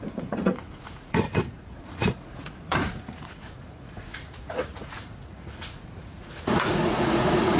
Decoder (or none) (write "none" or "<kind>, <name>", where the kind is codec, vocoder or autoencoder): vocoder, Vocos